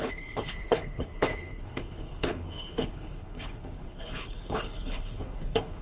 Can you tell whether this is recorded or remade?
remade